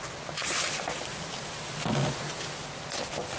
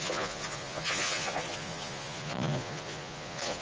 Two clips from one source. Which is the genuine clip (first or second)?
first